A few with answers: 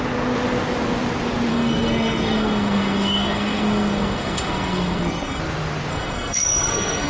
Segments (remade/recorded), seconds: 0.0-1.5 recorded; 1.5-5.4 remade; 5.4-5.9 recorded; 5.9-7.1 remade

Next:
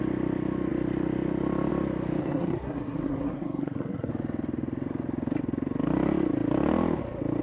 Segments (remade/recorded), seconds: 0.0-2.2 recorded; 2.2-4.1 remade; 4.1-7.4 recorded

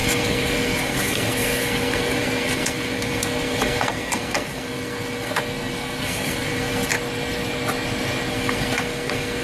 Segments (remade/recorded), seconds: 0.0-6.9 remade; 6.9-8.3 recorded; 8.3-9.4 remade